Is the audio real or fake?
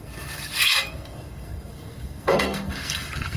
fake